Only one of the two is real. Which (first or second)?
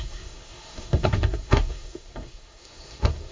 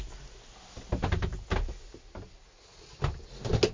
second